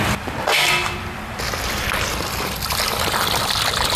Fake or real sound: fake